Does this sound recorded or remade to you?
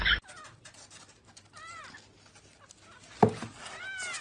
recorded